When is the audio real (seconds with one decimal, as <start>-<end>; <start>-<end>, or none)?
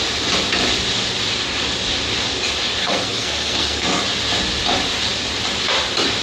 0.0-2.8; 4.0-6.2